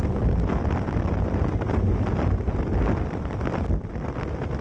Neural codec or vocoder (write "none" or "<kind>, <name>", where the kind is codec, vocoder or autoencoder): none